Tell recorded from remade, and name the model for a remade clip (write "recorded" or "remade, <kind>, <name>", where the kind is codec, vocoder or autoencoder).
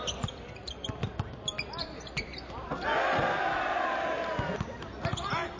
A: recorded